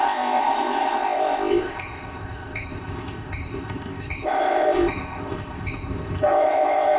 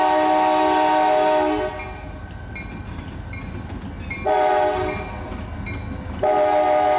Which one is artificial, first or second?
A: first